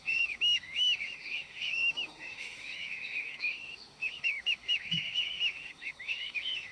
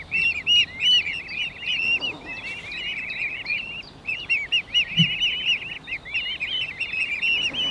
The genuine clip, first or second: second